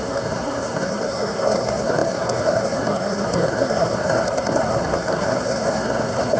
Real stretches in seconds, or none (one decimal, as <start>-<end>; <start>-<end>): none